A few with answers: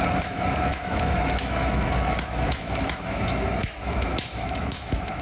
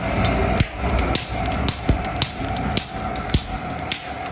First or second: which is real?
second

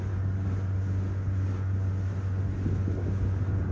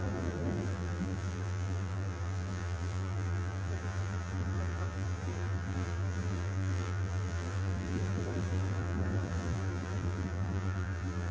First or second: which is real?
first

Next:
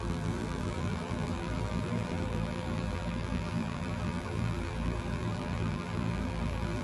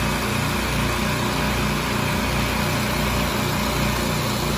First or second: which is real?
second